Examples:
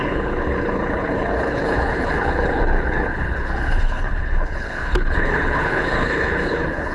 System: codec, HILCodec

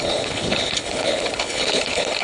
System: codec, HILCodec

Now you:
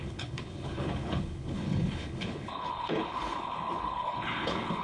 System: codec, HILCodec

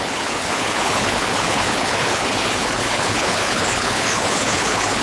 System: codec, HILCodec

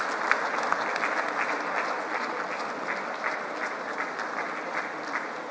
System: none